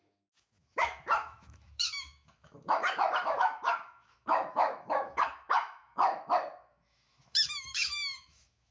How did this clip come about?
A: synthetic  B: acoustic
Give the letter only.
A